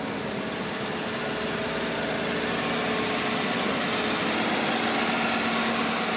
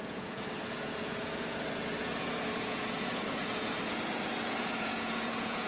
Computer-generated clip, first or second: second